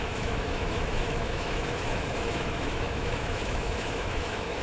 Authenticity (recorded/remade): remade